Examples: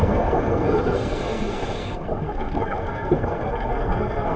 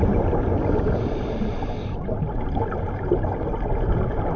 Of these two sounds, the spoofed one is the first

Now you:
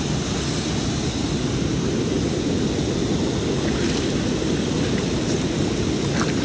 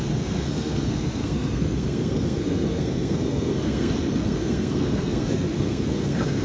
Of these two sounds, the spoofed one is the second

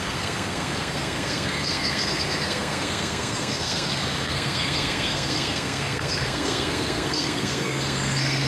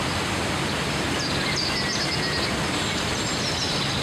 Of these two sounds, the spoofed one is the first